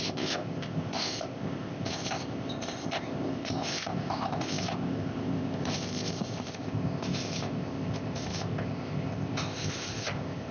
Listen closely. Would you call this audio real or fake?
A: fake